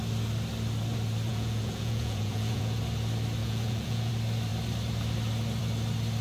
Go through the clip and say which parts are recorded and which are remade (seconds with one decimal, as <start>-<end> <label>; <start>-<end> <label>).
0.0-1.3 recorded; 1.3-2.8 remade; 2.8-3.4 recorded; 3.4-4.1 remade; 4.1-6.2 recorded